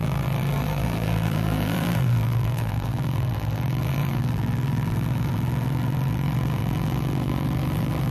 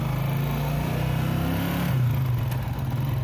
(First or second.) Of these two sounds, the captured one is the second